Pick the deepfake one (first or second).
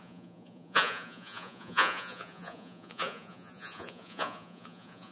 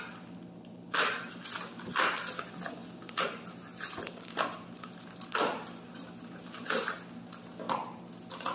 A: first